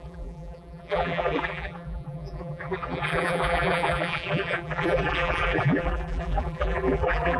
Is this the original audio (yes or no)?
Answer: no